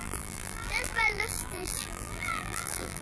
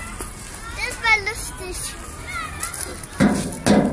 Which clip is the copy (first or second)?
first